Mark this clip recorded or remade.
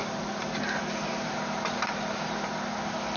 recorded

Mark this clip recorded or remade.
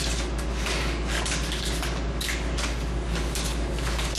remade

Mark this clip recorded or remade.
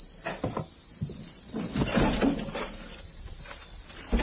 recorded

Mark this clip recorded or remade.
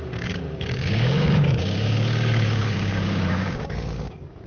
remade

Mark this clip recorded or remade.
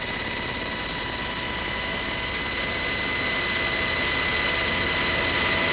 recorded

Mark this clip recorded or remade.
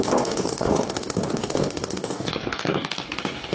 remade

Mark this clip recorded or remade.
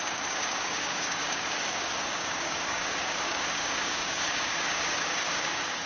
remade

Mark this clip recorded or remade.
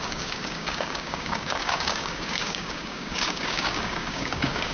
remade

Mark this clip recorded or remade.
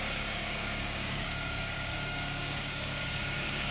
remade